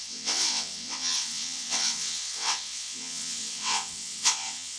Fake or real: fake